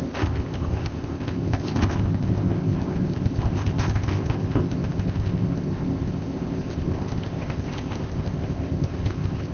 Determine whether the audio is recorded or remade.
remade